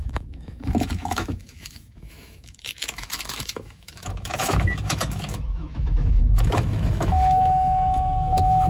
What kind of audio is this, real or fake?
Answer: fake